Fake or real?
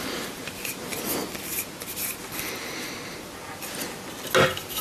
real